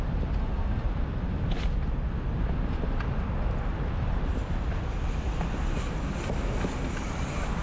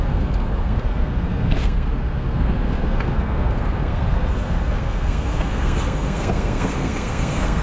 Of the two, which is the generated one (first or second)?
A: second